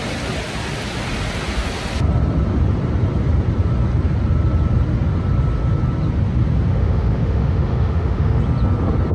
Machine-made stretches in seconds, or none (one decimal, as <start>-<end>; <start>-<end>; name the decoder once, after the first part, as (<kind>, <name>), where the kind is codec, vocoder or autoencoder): 6.7-8.4 (autoencoder, DAC-VAE)